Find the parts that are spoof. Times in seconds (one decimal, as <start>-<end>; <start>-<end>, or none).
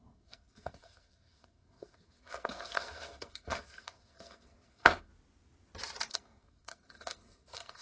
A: 0.0-5.1; 6.1-7.8